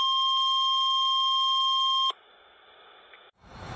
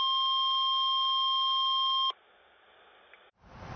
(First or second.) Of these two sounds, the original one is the second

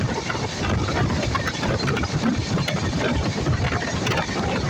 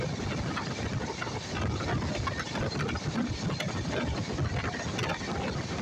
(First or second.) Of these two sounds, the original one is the second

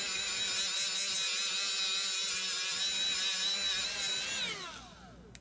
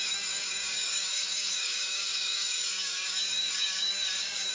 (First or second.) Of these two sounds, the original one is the first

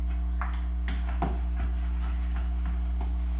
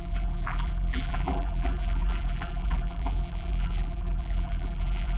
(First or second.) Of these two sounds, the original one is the first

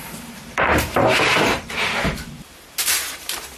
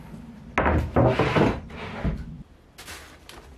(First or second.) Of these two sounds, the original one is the second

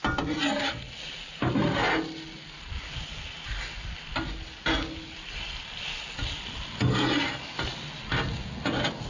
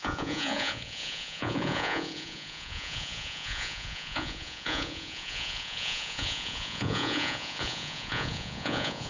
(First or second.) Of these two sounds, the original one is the first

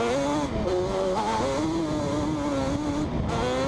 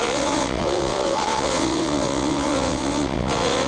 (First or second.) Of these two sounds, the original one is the first